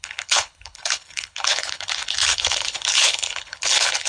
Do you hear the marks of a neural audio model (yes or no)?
yes